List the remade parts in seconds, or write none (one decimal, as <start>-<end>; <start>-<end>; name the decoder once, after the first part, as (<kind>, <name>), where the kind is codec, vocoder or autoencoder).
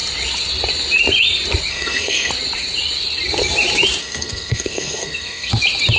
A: 1.7-2.3 (codec, SNAC); 4.0-5.5